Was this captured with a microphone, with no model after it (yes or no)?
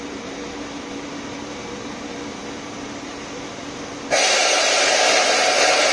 no